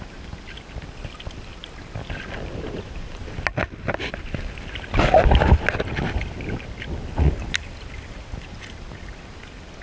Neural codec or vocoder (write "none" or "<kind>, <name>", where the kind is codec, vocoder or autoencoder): none